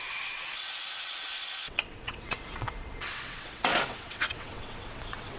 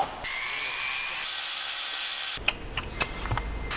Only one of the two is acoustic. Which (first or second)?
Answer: second